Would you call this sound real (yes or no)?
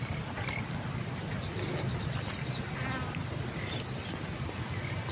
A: yes